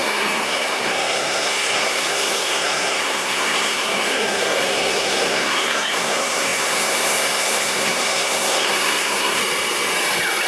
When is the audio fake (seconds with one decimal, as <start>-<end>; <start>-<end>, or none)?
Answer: 0.0-9.4